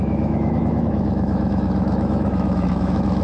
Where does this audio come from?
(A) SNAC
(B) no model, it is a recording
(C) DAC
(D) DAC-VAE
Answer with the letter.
D